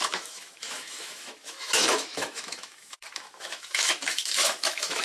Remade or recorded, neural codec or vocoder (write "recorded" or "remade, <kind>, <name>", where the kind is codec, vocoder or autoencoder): remade, autoencoder, DAC-VAE